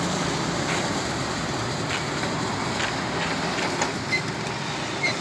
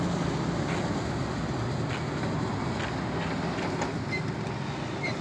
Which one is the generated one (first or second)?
first